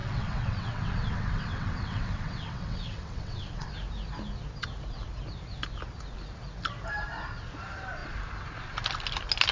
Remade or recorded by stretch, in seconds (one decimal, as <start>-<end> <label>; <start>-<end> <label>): 0.0-3.7 remade; 3.7-9.5 recorded